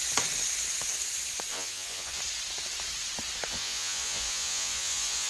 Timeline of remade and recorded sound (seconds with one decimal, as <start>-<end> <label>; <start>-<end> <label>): 0.0-1.5 recorded; 1.5-2.2 remade; 2.2-3.5 recorded; 3.5-5.3 remade